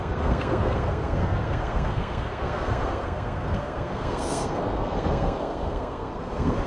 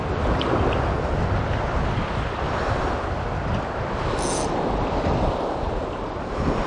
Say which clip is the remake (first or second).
first